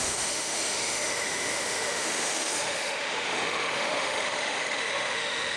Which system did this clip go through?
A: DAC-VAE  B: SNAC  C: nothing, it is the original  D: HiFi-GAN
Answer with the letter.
A